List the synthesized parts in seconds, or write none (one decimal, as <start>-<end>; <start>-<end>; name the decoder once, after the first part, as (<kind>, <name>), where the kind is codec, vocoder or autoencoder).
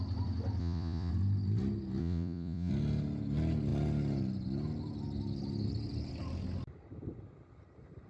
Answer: 0.6-1.1 (vocoder, Vocos); 2.0-2.7